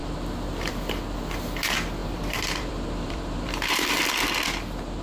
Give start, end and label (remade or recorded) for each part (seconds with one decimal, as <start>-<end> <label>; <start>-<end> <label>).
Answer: 0.0-2.0 recorded; 2.0-4.1 remade; 4.1-5.0 recorded

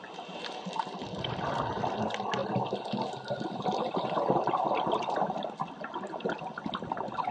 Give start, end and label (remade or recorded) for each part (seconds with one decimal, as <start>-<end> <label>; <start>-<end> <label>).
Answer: 0.0-7.3 recorded

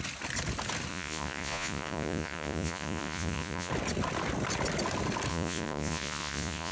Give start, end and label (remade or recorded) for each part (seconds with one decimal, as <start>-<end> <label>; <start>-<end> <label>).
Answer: 0.0-0.9 recorded; 0.9-3.7 remade; 3.7-5.3 recorded; 5.3-6.7 remade

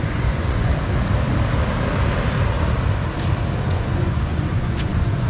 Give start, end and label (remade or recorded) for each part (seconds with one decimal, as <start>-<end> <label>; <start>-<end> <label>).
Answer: 0.0-0.7 remade; 0.7-3.7 recorded; 3.7-5.3 remade

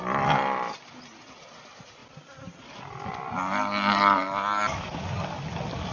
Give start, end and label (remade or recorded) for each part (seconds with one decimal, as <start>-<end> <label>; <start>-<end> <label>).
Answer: 0.0-5.9 recorded

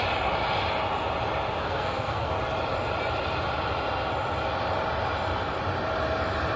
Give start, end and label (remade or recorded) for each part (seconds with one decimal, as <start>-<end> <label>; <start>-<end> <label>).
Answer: 0.0-1.6 recorded; 1.6-2.3 remade; 2.3-6.6 recorded